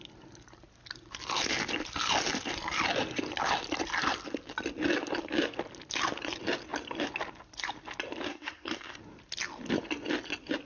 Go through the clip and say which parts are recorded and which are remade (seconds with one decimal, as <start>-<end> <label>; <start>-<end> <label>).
0.0-8.3 recorded; 8.3-9.0 remade; 9.0-10.7 recorded